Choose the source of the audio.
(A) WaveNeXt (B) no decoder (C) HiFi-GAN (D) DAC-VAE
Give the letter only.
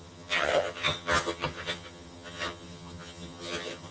C